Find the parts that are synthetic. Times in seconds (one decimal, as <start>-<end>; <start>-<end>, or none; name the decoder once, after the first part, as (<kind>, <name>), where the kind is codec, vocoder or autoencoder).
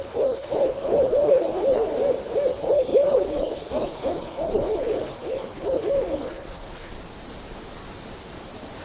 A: 0.0-1.9 (codec, HILCodec); 2.5-6.9